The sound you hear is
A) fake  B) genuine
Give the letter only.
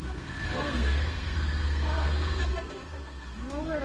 A